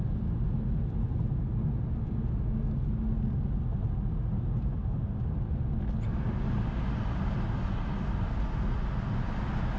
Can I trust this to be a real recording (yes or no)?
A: yes